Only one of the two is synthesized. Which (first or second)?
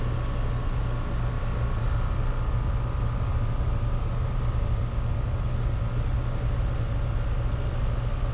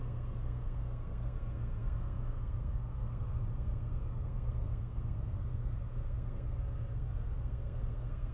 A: second